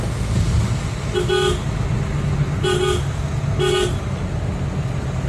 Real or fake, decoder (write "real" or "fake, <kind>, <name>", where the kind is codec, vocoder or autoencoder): real